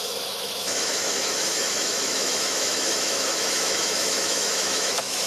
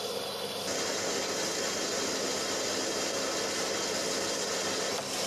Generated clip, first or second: first